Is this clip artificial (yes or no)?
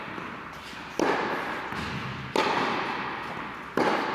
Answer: no